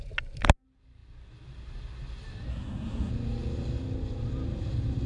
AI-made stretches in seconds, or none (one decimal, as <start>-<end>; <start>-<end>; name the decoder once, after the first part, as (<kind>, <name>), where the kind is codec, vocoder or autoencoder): 2.5-3.1 (codec, SNAC)